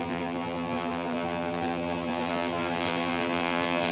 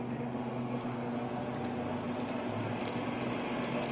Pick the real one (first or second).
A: second